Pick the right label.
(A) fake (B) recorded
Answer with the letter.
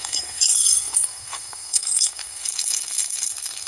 A